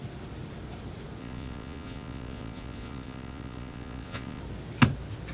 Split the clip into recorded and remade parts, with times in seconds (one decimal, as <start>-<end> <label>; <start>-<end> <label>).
0.0-1.2 recorded; 1.2-4.4 remade; 4.4-5.3 recorded